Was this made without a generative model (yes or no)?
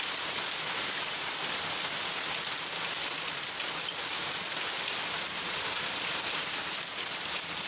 yes